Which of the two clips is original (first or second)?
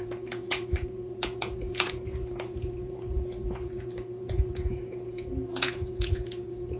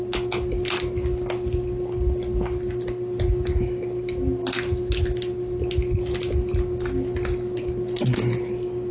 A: second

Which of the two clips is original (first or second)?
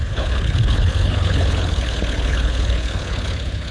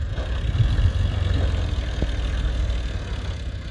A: second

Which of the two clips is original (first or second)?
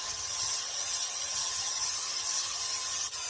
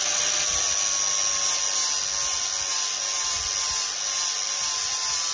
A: second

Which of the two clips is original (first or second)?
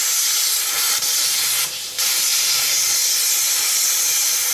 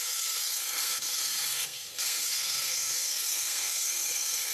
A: first